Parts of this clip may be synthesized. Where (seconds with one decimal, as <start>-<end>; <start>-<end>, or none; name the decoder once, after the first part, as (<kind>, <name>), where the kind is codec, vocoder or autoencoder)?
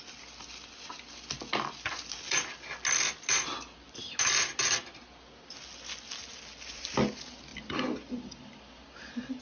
7.5-8.4 (vocoder, BigVGAN v2)